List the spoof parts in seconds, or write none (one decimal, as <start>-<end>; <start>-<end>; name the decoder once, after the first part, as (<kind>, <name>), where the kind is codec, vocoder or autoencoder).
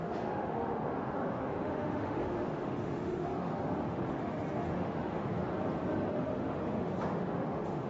0.0-5.5 (autoencoder, DAC-VAE); 6.1-7.9